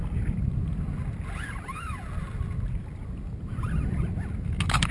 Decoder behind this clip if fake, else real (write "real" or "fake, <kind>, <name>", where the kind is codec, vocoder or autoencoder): real